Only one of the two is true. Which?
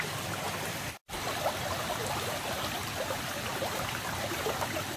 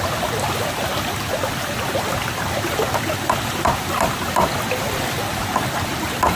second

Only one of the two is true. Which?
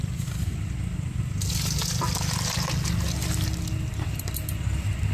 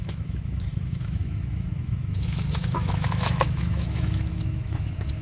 first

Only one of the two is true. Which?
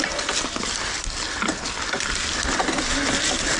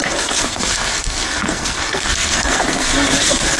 first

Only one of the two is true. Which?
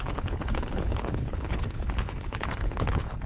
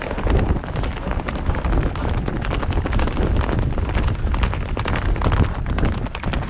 second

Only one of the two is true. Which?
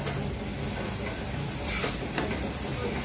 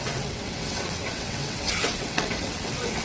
first